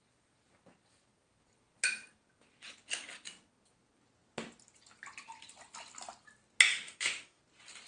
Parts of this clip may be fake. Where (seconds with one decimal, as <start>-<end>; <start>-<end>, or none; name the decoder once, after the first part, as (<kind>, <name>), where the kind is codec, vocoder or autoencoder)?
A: 6.7-7.4 (autoencoder, DAC-VAE)